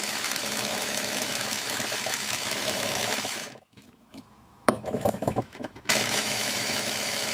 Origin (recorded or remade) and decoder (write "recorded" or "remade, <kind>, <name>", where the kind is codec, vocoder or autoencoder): remade, autoencoder, DAC-VAE